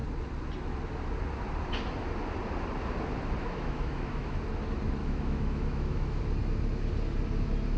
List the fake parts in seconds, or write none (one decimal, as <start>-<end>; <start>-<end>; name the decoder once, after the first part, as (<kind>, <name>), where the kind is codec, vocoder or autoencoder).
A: 3.4-4.4 (autoencoder, DAC-VAE); 5.0-6.2